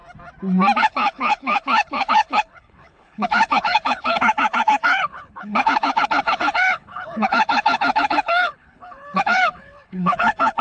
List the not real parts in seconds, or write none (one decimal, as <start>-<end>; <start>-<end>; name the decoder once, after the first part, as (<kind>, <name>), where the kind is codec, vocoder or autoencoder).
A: 0.8-10.6 (codec, HILCodec)

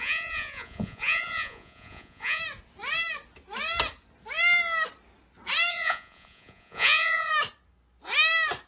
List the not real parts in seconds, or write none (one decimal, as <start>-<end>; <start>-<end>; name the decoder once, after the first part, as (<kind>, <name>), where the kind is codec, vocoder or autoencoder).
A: 0.0-2.4 (vocoder, Vocos); 5.7-7.3

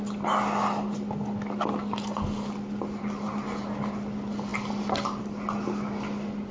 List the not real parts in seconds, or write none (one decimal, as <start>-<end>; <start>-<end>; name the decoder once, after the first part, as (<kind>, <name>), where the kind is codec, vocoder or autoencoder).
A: none

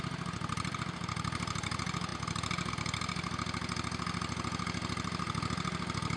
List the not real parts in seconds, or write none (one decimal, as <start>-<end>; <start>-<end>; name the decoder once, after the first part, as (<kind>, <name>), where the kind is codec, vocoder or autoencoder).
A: none

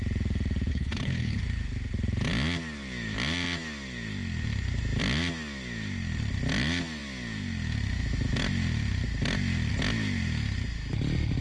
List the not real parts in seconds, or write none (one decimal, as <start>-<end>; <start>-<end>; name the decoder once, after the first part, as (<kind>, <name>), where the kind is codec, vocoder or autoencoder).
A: 0.7-1.4 (codec, HILCodec)

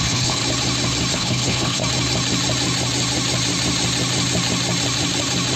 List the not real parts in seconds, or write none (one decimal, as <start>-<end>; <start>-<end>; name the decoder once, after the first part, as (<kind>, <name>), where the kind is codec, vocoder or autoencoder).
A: 0.0-0.4 (codec, HILCodec); 1.1-1.8